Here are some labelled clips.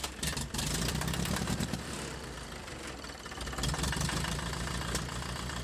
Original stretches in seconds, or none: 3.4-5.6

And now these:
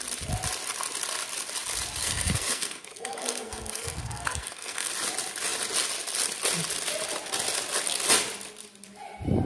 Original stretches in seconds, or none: 0.0-2.0; 4.9-9.5